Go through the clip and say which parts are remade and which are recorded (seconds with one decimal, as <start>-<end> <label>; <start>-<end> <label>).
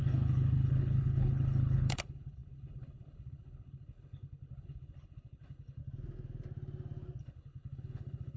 0.0-5.8 remade; 5.8-7.2 recorded; 7.2-8.4 remade